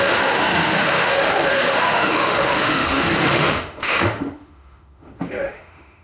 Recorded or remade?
remade